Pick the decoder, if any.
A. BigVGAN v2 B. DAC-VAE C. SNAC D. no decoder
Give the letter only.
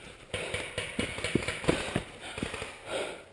D